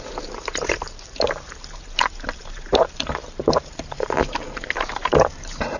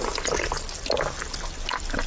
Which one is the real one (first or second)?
second